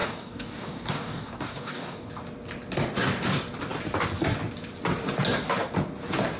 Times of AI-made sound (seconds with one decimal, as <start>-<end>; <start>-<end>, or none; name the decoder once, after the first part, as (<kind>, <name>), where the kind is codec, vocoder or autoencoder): 0.0-2.1 (codec, DAC)